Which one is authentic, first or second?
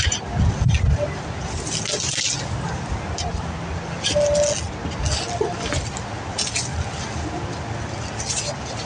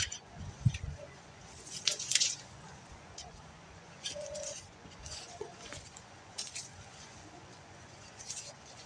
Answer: first